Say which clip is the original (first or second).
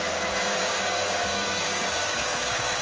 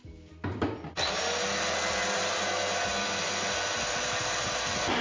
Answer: second